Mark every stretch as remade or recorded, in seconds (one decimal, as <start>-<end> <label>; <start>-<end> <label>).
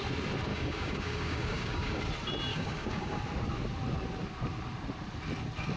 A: 0.0-0.5 recorded; 0.5-2.0 remade; 2.0-2.5 recorded; 2.5-3.2 remade; 3.2-5.8 recorded